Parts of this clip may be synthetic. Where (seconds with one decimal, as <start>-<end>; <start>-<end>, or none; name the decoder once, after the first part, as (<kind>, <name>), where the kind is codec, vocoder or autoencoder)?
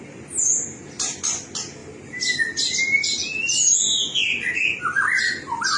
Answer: none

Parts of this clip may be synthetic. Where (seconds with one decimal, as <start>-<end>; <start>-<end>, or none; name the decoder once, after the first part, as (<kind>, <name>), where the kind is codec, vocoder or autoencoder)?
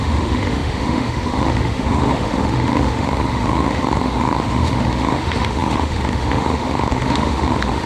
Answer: 0.0-7.9 (autoencoder, DAC-VAE)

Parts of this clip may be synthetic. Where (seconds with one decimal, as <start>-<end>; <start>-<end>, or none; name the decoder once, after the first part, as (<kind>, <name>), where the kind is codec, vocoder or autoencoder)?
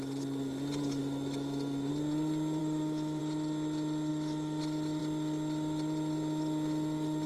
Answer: 1.0-1.9 (autoencoder, DAC-VAE); 2.6-3.2; 4.1-4.6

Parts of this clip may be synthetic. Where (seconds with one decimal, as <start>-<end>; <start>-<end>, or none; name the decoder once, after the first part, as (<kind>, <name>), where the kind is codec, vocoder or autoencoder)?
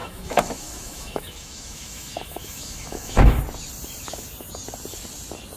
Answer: 0.0-3.4 (autoencoder, DAC-VAE)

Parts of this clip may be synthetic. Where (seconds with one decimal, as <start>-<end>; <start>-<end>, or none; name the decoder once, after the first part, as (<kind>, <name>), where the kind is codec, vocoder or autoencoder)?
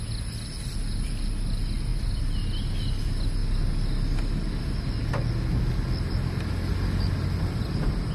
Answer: none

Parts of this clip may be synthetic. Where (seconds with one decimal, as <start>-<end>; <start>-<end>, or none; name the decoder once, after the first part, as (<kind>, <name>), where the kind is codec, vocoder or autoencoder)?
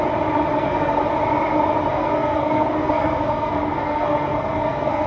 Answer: 0.5-1.0 (codec, SNAC); 1.9-5.1